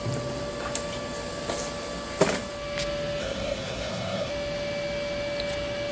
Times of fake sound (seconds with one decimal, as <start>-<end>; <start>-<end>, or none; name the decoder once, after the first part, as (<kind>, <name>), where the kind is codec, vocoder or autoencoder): 3.2-4.3 (codec, SNAC)